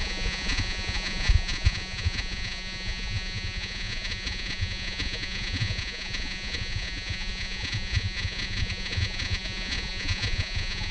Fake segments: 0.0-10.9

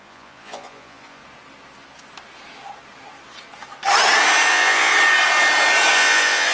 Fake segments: 0.0-1.2; 4.5-4.9; 5.9-6.5

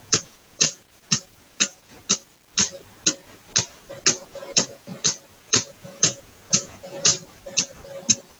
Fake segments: 0.0-2.0; 4.1-4.9; 5.4-7.1

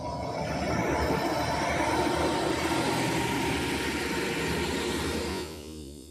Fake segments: 5.3-6.1